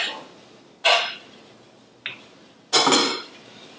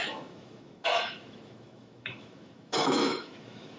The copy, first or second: second